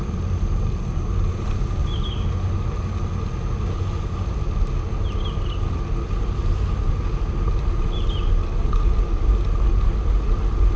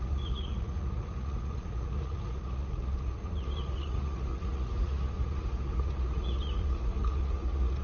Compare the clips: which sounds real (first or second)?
first